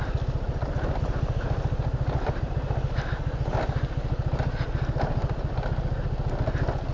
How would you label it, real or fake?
real